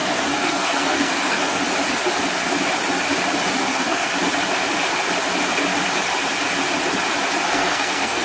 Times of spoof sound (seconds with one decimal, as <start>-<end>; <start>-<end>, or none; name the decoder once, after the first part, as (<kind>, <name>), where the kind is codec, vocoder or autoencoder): 0.0-1.6 (codec, SNAC); 3.6-4.1; 7.5-8.2